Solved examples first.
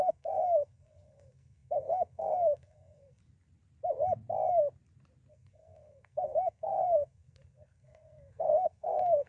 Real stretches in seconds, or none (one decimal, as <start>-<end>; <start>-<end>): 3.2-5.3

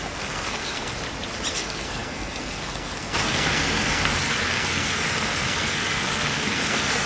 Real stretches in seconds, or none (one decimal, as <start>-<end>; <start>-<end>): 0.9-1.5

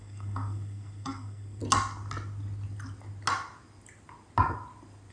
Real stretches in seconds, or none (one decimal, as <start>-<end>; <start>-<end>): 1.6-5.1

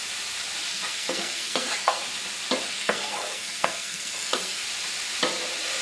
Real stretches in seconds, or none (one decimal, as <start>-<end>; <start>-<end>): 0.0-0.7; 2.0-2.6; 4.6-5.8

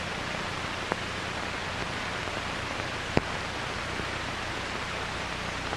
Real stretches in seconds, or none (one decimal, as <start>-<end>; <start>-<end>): 0.0-5.8